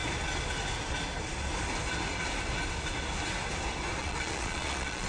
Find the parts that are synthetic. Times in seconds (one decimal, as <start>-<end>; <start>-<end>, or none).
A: 4.0-5.1